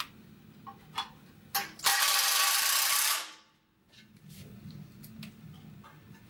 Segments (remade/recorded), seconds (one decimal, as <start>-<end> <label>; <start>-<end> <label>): 0.0-6.3 recorded